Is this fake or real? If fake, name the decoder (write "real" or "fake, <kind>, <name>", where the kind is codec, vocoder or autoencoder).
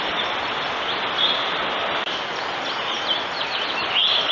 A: real